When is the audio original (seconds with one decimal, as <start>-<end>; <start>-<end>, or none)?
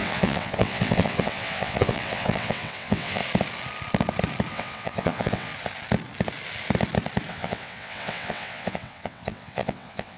3.2-4.5; 5.5-7.3